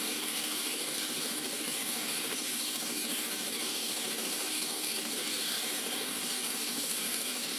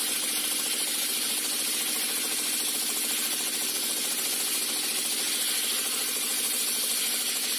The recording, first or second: second